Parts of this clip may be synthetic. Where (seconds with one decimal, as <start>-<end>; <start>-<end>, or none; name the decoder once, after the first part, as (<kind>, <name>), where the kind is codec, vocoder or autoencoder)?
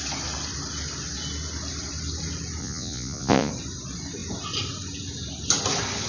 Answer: 2.6-3.5 (vocoder, Vocos)